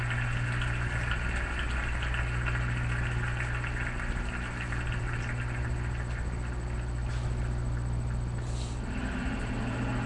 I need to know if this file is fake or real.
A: real